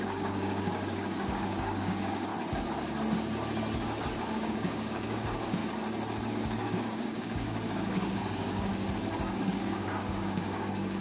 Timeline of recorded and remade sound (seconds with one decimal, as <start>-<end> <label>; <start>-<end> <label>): 0.0-2.3 remade; 2.3-4.5 recorded; 4.5-5.6 remade; 5.6-6.3 recorded; 6.3-8.7 remade; 8.7-9.4 recorded; 9.4-11.0 remade